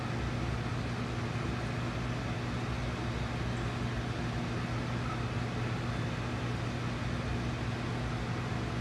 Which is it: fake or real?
real